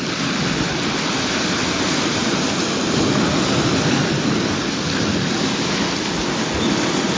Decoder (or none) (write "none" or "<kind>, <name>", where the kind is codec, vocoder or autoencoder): none